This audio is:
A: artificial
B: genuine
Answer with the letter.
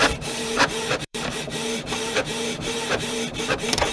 A